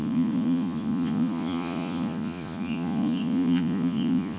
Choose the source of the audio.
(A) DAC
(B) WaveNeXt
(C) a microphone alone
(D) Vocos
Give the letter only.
D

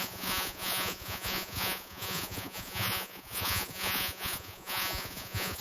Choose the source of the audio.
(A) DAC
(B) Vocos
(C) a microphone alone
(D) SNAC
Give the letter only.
B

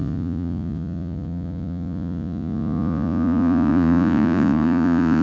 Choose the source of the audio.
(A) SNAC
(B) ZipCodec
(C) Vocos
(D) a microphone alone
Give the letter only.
C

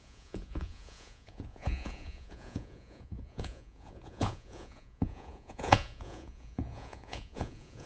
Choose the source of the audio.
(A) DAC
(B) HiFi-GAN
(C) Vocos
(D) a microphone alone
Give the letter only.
C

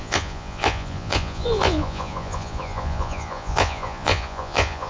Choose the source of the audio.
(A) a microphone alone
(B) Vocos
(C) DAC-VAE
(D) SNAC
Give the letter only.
B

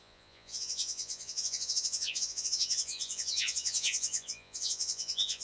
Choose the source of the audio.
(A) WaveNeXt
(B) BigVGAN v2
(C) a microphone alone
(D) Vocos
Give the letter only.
D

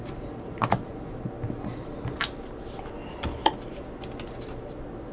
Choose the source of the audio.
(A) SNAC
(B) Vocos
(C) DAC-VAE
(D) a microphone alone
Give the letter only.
D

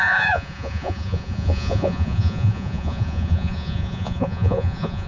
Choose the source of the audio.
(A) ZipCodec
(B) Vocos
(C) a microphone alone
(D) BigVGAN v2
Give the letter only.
B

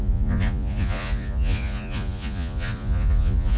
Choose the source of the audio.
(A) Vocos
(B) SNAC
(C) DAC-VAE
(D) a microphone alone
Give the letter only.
A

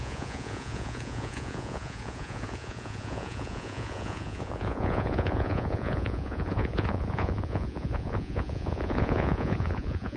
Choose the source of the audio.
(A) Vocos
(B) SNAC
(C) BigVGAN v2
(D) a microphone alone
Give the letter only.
A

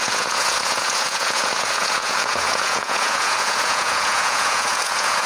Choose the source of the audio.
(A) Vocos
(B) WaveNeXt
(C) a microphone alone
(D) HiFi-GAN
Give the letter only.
A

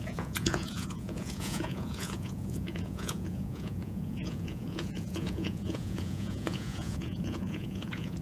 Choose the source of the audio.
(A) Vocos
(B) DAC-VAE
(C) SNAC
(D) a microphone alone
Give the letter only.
A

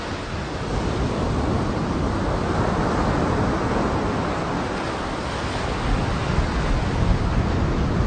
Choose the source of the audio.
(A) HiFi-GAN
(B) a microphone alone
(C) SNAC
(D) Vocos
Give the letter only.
B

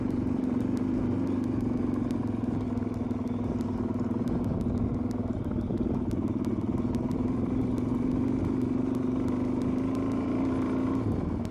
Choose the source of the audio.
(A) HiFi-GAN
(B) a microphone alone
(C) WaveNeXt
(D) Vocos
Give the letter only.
B